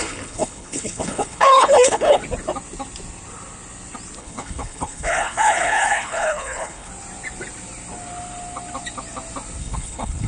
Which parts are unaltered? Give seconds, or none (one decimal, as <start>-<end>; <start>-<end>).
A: 2.2-4.2; 6.9-9.6